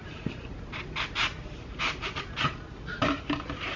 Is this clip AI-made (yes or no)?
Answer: no